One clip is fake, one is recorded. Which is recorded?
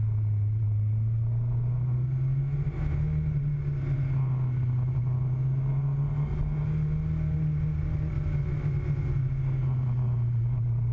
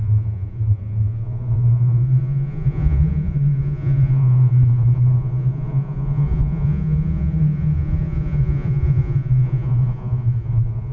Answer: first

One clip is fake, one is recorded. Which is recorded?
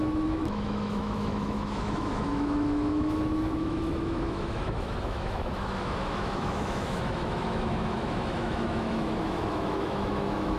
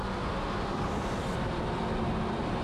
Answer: second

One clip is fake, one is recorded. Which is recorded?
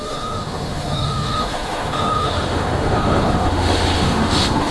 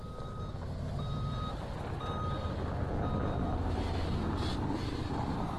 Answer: second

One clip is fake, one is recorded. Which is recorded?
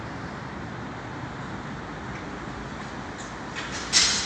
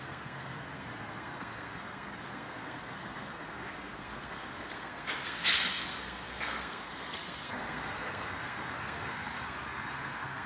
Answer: first